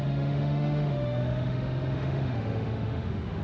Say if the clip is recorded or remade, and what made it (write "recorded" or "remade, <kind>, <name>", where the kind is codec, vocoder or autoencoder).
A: remade, autoencoder, DAC-VAE